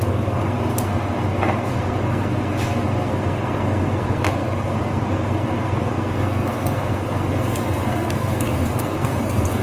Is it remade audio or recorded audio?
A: remade